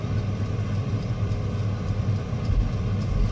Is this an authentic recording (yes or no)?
no